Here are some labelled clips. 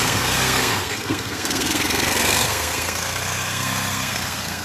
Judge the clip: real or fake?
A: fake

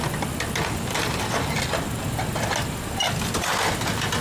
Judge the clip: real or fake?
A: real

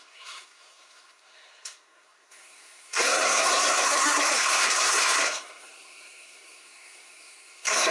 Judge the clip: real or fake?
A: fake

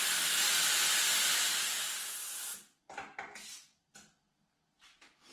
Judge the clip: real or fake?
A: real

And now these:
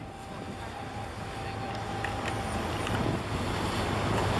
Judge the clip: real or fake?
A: real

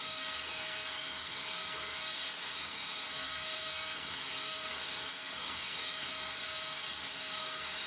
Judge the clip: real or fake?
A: fake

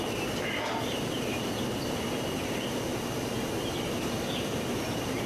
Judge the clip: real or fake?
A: real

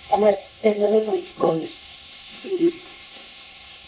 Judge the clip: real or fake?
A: fake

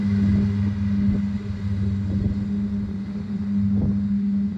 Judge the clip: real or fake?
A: real